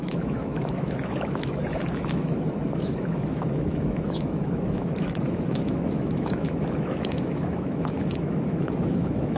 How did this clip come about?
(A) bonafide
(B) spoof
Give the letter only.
B